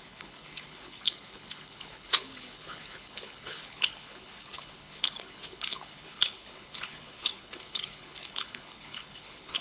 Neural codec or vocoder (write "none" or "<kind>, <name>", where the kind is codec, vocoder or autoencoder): codec, HILCodec